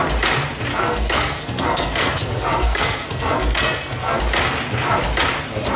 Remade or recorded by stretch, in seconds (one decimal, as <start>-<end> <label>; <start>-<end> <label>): 0.0-0.7 recorded; 0.7-4.2 remade; 4.2-5.8 recorded